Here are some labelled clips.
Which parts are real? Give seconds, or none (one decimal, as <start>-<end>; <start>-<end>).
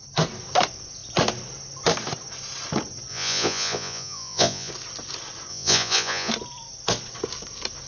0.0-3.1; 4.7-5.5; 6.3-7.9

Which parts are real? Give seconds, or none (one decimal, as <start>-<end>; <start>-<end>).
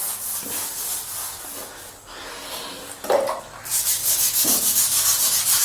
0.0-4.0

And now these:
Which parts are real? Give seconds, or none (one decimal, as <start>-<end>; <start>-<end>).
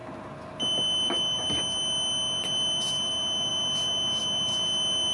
0.0-5.1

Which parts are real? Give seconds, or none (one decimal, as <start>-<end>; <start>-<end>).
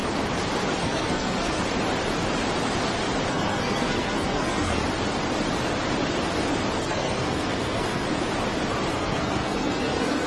0.0-0.8; 1.6-3.3; 4.8-6.8; 8.1-8.9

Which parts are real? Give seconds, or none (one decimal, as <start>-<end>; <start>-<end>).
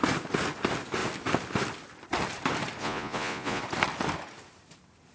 0.0-2.8; 3.6-5.1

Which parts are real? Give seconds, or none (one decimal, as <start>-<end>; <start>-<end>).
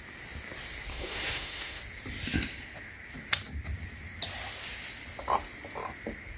0.0-0.9; 1.8-6.4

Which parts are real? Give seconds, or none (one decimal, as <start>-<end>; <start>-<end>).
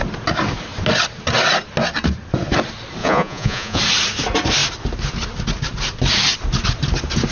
0.0-3.0; 3.8-7.3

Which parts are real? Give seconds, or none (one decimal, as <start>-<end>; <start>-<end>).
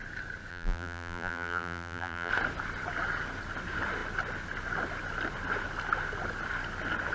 0.0-0.5; 2.3-7.1